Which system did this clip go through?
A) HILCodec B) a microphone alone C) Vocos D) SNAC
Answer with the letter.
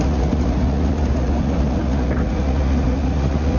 C